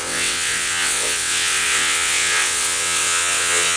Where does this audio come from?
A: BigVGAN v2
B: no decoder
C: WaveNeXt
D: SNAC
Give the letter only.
C